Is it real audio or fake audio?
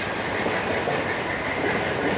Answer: real